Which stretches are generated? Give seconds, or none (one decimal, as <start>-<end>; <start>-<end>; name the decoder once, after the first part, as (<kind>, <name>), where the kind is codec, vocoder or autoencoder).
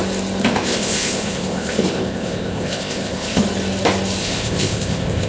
0.4-3.4 (codec, ZipCodec); 4.2-5.3